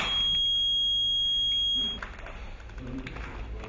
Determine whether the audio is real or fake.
real